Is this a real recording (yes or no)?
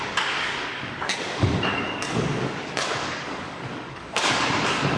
no